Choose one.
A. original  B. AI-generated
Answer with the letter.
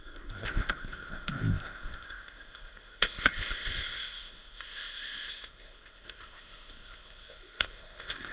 B